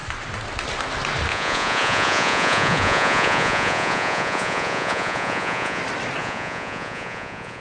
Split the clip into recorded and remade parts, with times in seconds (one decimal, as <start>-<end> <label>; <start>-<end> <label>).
0.0-1.3 recorded; 1.3-5.8 remade; 5.8-6.2 recorded; 6.2-7.6 remade